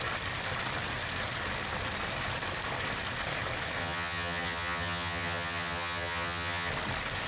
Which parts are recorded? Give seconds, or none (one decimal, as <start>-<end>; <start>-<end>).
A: 0.0-3.8; 6.7-7.3